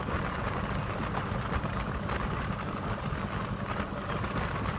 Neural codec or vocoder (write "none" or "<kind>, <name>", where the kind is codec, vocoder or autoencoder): none